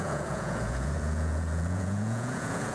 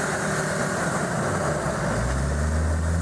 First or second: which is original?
second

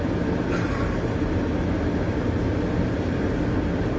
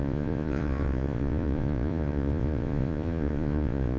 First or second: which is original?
first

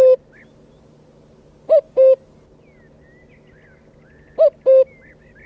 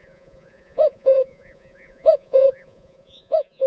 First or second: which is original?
first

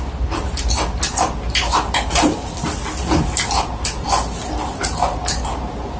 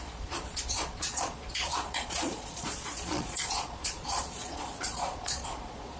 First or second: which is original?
first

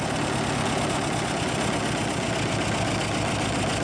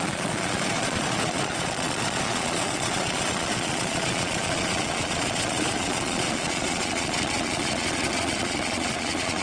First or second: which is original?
first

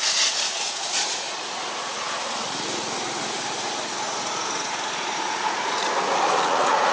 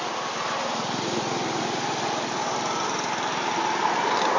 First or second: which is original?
second